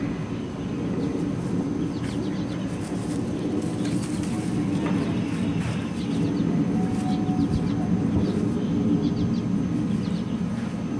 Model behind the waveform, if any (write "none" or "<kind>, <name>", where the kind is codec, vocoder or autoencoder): none